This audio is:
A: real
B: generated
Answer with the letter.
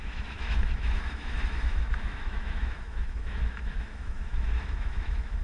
B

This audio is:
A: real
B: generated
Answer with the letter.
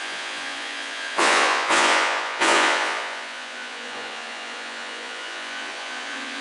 B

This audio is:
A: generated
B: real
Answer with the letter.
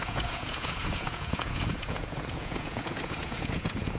A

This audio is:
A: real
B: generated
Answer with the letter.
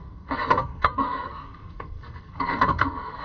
B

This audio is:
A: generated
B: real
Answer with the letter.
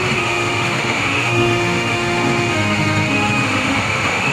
A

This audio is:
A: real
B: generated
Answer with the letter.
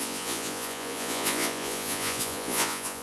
B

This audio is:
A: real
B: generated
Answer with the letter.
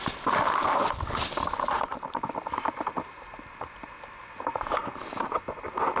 B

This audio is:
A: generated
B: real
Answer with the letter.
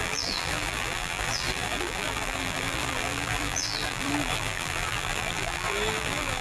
A